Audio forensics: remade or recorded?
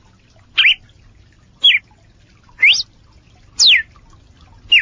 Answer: recorded